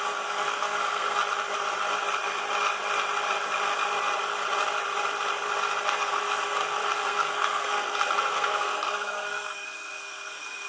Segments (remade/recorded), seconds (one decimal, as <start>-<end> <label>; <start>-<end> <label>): 0.0-1.2 remade; 1.2-5.8 recorded; 5.8-10.7 remade